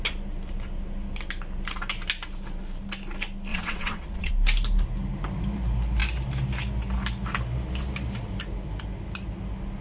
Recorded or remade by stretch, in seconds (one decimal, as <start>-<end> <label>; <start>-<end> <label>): 0.0-3.5 recorded; 3.5-4.3 remade; 4.3-9.8 recorded